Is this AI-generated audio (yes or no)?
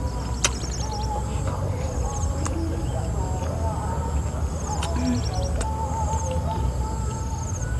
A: no